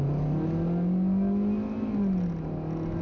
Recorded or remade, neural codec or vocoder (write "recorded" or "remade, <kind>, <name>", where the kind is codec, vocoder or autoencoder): recorded